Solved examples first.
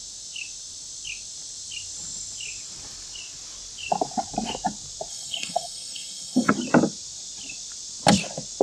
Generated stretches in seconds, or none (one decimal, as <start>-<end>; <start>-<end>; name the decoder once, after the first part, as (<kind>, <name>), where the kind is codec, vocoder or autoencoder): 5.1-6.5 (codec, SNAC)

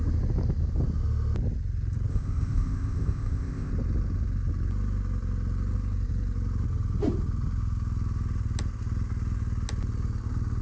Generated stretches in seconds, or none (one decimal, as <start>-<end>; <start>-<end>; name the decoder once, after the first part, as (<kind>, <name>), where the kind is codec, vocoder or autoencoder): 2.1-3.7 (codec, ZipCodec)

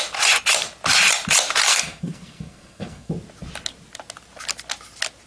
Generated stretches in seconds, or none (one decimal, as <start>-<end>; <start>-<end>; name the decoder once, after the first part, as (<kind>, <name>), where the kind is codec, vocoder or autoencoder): 1.7-3.1 (codec, SNAC)

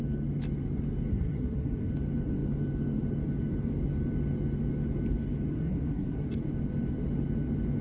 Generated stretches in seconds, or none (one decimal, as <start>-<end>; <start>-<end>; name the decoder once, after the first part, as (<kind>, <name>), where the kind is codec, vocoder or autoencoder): 1.1-1.9 (codec, SNAC); 5.5-6.3